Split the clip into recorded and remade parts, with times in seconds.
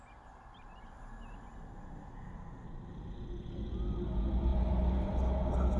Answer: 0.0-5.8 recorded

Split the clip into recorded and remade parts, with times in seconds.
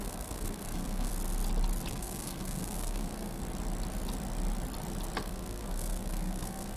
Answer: 0.0-1.1 remade; 1.1-1.9 recorded; 1.9-3.4 remade; 3.4-5.2 recorded; 5.2-6.8 remade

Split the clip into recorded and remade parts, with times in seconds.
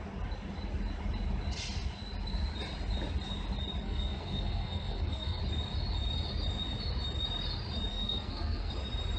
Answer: 0.0-3.8 recorded; 3.8-5.4 remade; 5.4-7.9 recorded; 7.9-8.7 remade; 8.7-9.2 recorded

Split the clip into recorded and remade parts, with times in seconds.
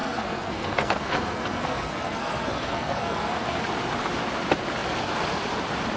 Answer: 0.0-3.6 remade; 3.6-6.0 recorded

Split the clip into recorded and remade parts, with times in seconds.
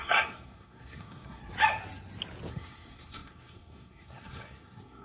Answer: 0.0-1.4 remade; 1.4-2.5 recorded; 2.5-5.0 remade